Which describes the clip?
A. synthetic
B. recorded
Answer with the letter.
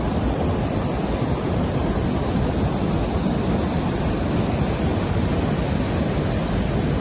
B